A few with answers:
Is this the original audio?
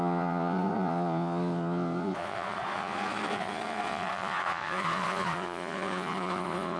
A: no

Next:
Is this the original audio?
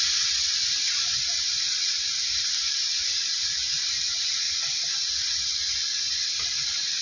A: yes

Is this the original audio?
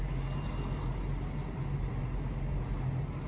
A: yes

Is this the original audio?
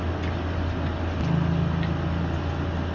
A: yes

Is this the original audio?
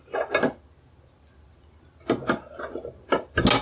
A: yes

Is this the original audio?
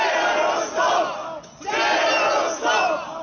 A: yes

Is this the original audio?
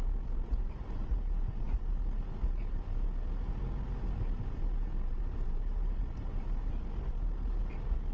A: yes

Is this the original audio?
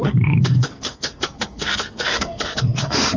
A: no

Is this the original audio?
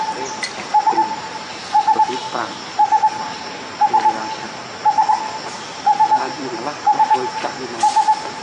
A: yes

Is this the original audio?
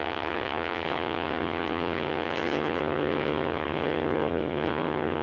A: no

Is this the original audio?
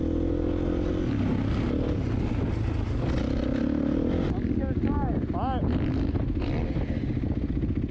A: yes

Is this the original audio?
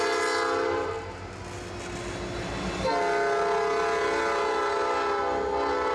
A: yes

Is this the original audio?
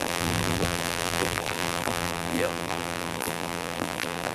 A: no